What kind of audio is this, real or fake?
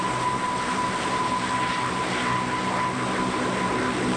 real